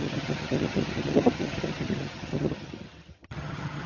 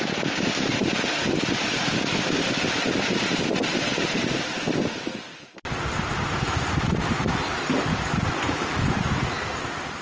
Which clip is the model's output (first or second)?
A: first